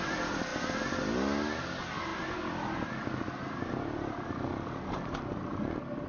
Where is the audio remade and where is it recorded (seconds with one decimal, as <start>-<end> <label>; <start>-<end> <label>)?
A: 0.0-6.1 recorded